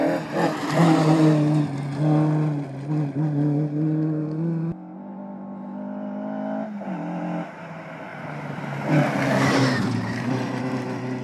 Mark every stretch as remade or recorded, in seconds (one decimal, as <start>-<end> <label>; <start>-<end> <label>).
0.0-8.1 recorded; 8.1-10.6 remade; 10.6-11.2 recorded